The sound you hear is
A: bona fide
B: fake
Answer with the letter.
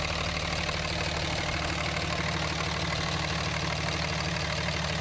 A